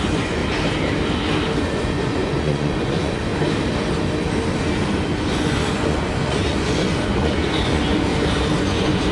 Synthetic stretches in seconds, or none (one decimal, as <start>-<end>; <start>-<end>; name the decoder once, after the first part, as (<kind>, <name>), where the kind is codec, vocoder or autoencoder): 0.0-0.4 (vocoder, Vocos); 1.6-3.3; 5.3-8.1; 8.6-9.1